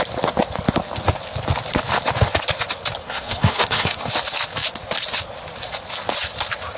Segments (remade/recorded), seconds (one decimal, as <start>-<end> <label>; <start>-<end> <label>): 0.0-3.0 recorded; 3.0-4.1 remade; 4.1-6.8 recorded